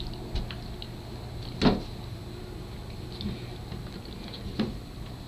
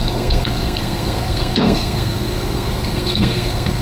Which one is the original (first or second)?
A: first